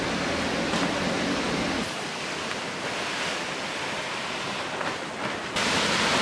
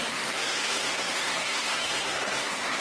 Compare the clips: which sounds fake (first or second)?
second